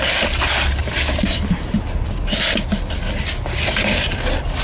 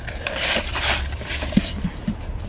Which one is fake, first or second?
first